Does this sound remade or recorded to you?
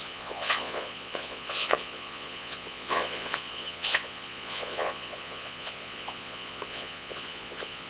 remade